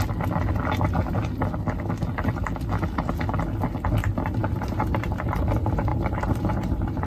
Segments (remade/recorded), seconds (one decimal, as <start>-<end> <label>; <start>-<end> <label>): 0.0-4.4 recorded; 4.4-5.4 remade; 5.4-5.9 recorded; 5.9-7.1 remade